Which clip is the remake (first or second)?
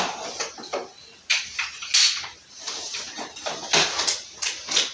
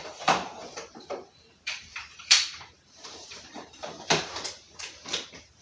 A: second